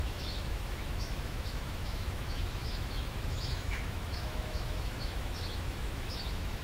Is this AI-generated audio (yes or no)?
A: yes